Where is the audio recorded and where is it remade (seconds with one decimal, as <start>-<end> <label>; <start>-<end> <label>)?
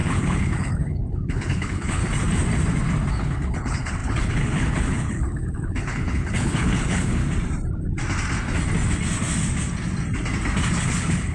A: 0.0-2.0 remade; 2.0-3.1 recorded; 3.1-7.2 remade; 7.2-10.8 recorded; 10.8-11.3 remade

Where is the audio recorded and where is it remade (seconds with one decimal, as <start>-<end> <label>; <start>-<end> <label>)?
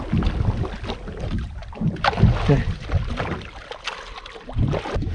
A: 0.0-5.1 recorded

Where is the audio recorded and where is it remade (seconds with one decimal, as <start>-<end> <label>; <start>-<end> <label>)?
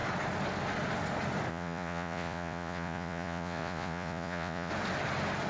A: 0.0-1.5 recorded; 1.5-4.7 remade; 4.7-5.5 recorded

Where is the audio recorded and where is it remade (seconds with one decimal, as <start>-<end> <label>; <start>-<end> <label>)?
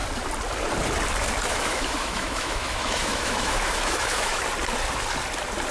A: 0.0-1.5 recorded; 1.5-4.4 remade; 4.4-5.7 recorded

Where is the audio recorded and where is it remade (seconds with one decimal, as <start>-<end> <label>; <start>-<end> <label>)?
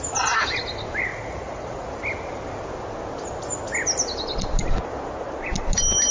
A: 0.0-1.1 recorded; 1.1-1.9 remade; 1.9-6.1 recorded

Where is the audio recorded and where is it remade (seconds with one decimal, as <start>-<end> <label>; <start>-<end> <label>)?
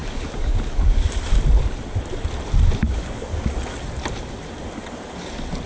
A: 0.0-1.2 remade; 1.2-2.8 recorded; 2.8-3.4 remade; 3.4-5.7 recorded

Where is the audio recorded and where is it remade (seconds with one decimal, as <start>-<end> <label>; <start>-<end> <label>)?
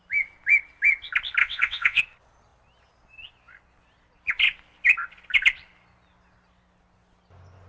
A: 0.0-1.4 recorded; 1.4-2.0 remade; 2.0-7.7 recorded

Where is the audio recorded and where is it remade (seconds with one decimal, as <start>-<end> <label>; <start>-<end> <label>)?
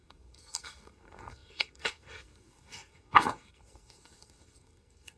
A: 0.0-5.2 remade